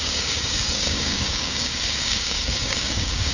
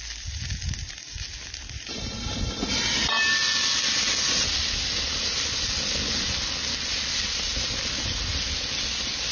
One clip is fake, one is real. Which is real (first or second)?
second